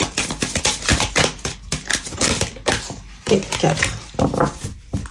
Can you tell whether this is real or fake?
real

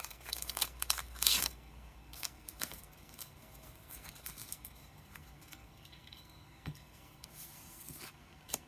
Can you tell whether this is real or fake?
fake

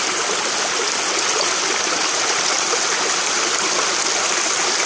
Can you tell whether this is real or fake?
real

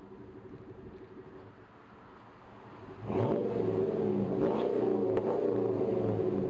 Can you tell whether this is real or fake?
real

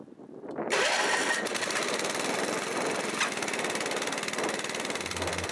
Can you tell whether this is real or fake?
real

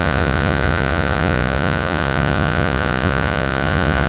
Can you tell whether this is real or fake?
fake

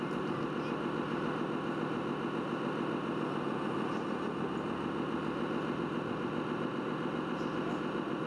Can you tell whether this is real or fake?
real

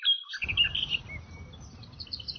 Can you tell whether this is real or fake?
real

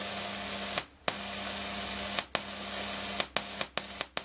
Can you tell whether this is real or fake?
real